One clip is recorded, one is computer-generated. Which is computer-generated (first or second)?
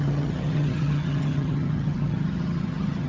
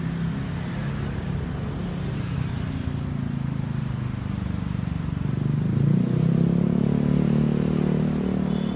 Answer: first